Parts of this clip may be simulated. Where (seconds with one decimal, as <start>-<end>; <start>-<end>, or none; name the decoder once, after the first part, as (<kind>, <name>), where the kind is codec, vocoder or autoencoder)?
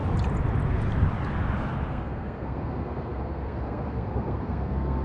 1.9-5.0 (codec, SNAC)